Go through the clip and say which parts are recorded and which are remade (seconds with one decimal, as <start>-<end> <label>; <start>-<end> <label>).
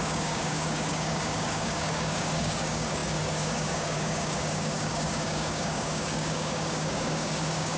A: 0.0-7.8 remade